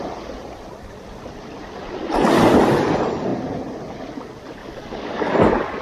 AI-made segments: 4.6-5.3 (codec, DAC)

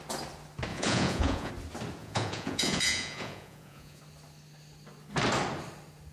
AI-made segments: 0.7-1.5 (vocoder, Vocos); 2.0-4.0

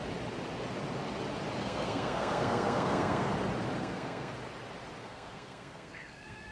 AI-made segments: 1.6-3.3 (codec, SNAC); 3.8-4.3; 5.0-6.5